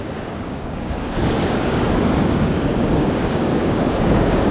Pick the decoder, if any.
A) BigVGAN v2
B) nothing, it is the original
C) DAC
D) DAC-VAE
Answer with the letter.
C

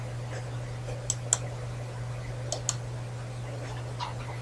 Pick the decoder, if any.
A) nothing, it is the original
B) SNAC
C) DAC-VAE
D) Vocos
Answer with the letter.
A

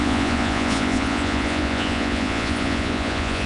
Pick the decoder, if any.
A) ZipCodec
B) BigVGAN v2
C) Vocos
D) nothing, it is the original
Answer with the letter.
C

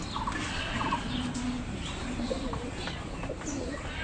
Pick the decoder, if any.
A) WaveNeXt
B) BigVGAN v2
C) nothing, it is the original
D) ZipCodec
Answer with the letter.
C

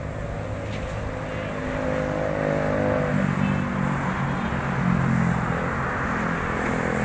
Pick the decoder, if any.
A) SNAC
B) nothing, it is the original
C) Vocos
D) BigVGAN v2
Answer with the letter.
B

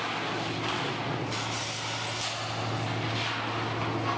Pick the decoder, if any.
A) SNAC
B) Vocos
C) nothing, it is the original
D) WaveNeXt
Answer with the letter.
C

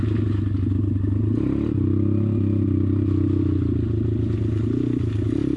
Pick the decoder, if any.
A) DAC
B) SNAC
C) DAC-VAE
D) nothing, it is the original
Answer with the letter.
D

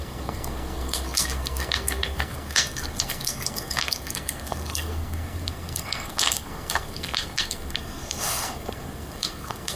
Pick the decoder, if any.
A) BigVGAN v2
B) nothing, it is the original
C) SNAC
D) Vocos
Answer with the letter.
C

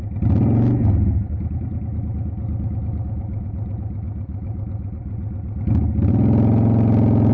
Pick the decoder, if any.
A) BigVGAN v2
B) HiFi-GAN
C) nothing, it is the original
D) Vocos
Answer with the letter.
C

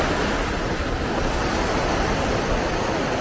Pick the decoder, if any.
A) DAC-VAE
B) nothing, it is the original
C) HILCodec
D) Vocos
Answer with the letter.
B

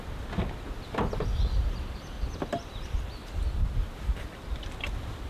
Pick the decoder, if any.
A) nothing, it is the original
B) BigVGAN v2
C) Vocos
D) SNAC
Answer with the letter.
A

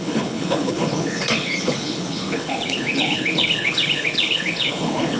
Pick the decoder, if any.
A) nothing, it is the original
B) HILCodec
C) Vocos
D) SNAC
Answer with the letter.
B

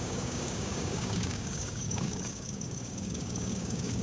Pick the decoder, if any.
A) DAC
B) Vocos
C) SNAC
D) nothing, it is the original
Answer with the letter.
A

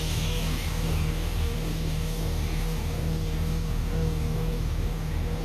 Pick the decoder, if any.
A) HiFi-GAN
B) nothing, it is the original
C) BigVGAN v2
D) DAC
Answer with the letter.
D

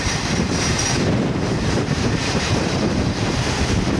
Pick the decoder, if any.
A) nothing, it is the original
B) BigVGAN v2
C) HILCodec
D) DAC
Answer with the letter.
B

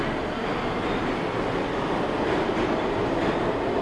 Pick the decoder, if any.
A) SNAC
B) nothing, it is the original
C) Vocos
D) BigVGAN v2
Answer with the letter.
B